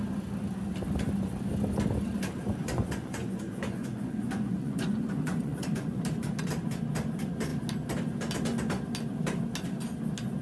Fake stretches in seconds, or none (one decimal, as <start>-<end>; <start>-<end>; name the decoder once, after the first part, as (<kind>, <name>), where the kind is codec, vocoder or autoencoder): 2.6-6.0 (vocoder, Vocos)